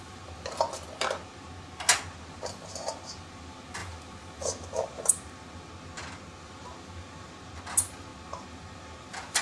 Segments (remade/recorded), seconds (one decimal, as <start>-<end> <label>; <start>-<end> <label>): 0.0-9.4 recorded